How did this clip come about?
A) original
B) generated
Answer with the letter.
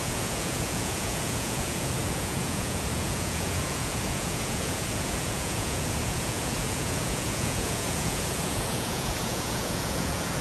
B